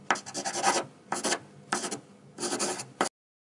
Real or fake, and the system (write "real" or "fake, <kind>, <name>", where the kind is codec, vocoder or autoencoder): real